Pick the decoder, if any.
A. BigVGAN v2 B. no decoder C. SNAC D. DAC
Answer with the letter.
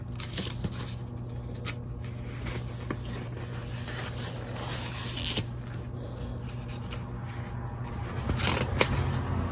B